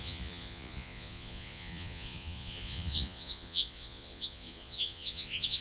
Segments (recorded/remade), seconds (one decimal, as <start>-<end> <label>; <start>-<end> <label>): 0.0-5.6 remade